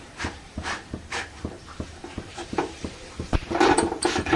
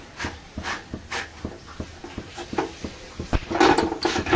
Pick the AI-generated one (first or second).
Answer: first